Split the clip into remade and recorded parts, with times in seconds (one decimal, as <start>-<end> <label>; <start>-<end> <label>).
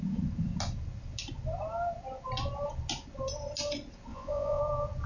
0.0-4.1 recorded; 4.1-4.6 remade; 4.6-5.1 recorded